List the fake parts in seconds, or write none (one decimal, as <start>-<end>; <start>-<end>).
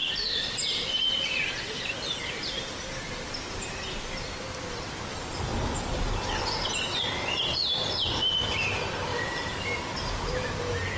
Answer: 9.1-9.8